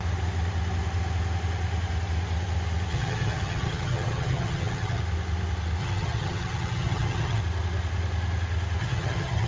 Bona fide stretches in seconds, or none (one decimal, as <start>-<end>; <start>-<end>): 0.0-2.9; 5.0-5.8; 7.4-8.8